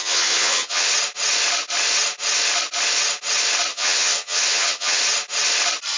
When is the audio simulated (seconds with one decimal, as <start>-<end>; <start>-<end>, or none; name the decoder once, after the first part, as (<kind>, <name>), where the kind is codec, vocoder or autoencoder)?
0.0-0.9 (vocoder, HiFi-GAN); 3.7-5.0